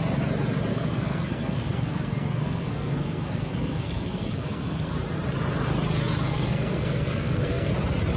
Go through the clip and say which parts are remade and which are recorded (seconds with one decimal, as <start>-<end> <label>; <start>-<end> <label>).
0.0-0.7 recorded; 0.7-4.9 remade; 4.9-6.3 recorded; 6.3-7.7 remade; 7.7-8.2 recorded